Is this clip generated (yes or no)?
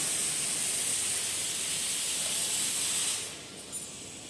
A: no